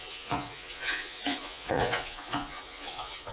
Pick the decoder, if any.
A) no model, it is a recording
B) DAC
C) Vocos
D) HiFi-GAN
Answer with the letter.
C